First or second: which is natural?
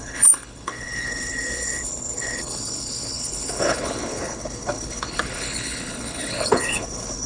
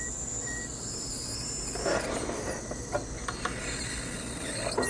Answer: second